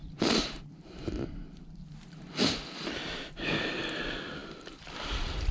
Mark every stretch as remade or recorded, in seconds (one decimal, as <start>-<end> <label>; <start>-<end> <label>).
0.0-4.4 recorded; 4.4-4.9 remade; 4.9-5.5 recorded